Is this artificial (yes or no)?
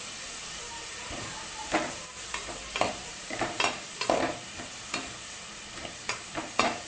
yes